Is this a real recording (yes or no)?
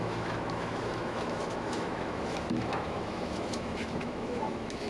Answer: no